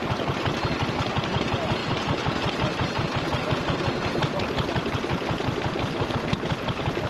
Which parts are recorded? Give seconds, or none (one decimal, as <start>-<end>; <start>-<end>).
0.0-7.1